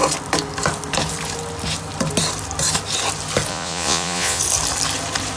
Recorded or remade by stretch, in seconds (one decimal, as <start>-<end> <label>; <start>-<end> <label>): 0.0-3.5 recorded; 3.5-4.4 remade; 4.4-5.4 recorded